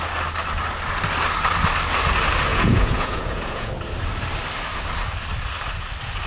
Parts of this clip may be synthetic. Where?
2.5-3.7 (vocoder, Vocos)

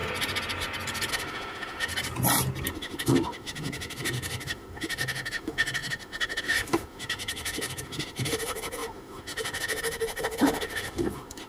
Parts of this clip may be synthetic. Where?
1.1-1.9 (autoencoder, DAC-VAE); 2.7-11.5